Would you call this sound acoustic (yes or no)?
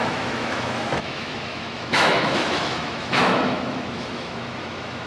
no